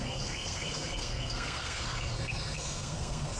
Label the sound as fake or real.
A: fake